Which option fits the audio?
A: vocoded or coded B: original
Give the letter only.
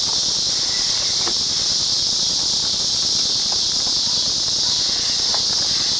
B